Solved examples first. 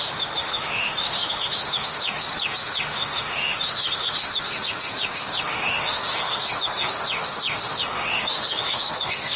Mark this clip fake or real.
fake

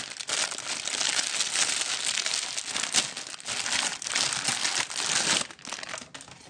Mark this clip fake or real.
real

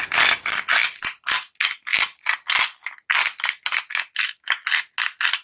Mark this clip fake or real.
real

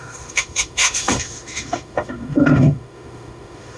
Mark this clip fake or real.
fake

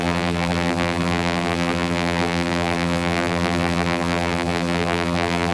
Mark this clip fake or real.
fake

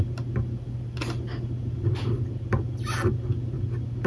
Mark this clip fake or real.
real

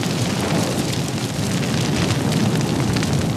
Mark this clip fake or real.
real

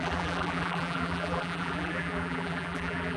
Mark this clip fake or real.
fake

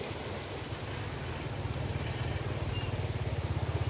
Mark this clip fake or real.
real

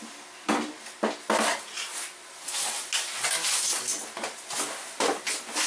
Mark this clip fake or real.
real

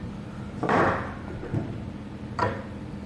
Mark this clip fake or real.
fake